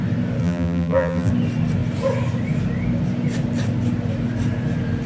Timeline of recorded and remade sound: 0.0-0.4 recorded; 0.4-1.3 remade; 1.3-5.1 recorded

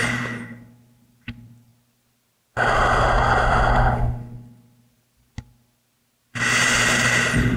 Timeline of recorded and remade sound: 0.0-1.7 remade; 1.7-6.3 recorded; 6.3-7.6 remade

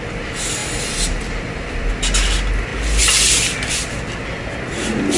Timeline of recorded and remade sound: 0.0-0.6 recorded; 0.6-1.9 remade; 1.9-5.2 recorded

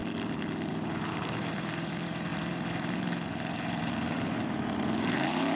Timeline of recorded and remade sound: 0.0-0.7 recorded; 0.7-5.6 remade

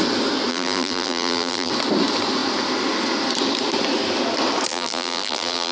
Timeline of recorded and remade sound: 0.0-0.5 recorded; 0.5-1.7 remade; 1.7-4.7 recorded; 4.7-5.7 remade

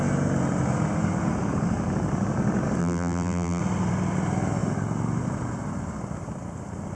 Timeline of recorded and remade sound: 0.0-2.8 recorded; 2.8-3.6 remade; 3.6-6.9 recorded

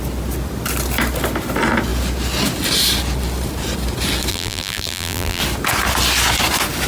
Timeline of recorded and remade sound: 0.0-4.3 recorded; 4.3-5.4 remade; 5.4-6.9 recorded

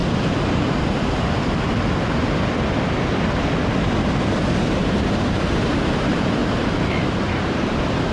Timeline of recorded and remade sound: 0.0-4.7 recorded; 4.7-6.4 remade; 6.4-7.0 recorded; 7.0-8.1 remade